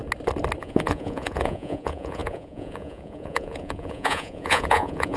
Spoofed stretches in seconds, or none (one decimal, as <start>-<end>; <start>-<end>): 0.6-5.2